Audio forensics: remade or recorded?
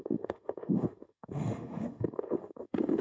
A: remade